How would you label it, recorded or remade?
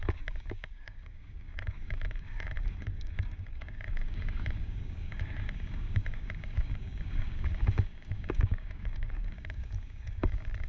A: remade